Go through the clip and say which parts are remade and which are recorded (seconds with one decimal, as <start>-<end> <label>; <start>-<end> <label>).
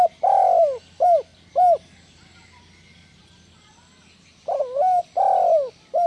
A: 0.0-6.1 recorded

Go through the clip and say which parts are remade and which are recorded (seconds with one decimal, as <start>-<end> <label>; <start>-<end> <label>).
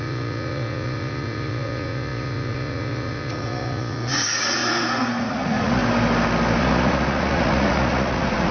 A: 0.0-4.6 remade; 4.6-5.2 recorded; 5.2-5.8 remade; 5.8-6.6 recorded; 6.6-8.5 remade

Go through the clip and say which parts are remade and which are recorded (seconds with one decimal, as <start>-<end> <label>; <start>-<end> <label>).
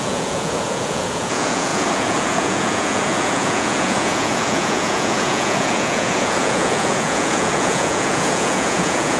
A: 0.0-9.2 remade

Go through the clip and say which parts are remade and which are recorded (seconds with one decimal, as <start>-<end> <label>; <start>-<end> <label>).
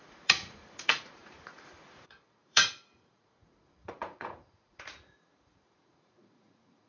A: 0.0-6.9 remade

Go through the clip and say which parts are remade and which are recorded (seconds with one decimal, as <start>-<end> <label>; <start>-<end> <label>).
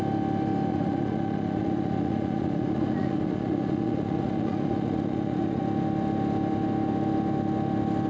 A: 0.0-0.7 recorded; 0.7-5.6 remade; 5.6-8.1 recorded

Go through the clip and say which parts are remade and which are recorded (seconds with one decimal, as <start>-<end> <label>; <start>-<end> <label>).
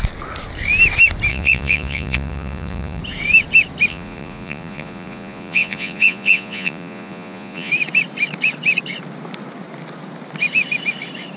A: 0.0-1.3 recorded; 1.3-3.0 remade; 3.0-3.9 recorded; 3.9-7.7 remade; 7.7-11.4 recorded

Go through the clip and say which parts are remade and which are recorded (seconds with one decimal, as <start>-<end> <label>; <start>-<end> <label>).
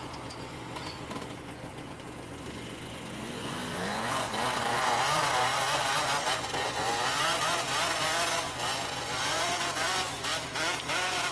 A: 0.0-10.3 remade; 10.3-10.9 recorded; 10.9-11.3 remade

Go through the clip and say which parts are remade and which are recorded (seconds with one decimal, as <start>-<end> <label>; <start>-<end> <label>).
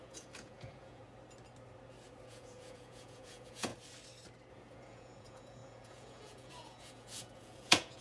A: 0.0-1.0 remade; 1.0-2.3 recorded; 2.3-3.7 remade; 3.7-4.5 recorded; 4.5-8.0 remade